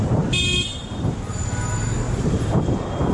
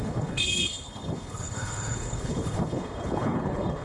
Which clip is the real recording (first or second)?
first